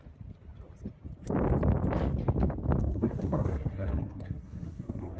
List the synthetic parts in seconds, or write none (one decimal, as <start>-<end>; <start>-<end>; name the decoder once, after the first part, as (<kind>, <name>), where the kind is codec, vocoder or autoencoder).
2.8-5.2 (codec, SNAC)